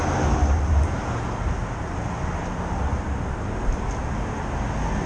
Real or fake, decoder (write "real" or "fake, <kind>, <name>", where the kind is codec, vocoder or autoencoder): real